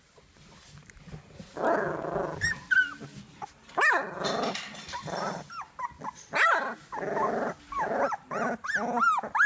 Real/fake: real